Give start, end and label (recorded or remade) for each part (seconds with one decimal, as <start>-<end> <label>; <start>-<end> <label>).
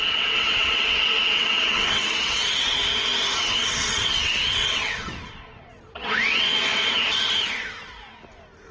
0.0-2.8 remade; 2.8-3.7 recorded; 3.7-6.8 remade; 6.8-8.7 recorded